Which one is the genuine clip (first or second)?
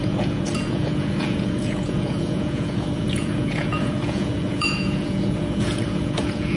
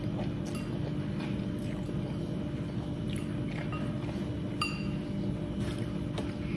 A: second